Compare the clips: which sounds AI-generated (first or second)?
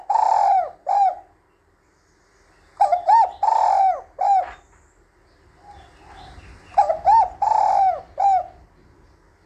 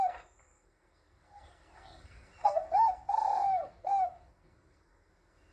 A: second